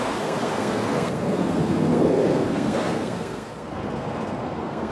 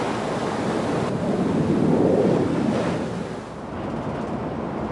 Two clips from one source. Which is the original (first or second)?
second